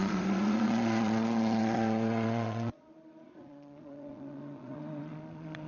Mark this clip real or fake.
fake